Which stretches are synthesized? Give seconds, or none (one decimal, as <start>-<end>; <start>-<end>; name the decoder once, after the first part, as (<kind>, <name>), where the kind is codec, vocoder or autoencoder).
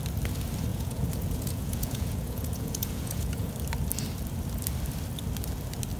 0.7-3.5 (vocoder, Vocos)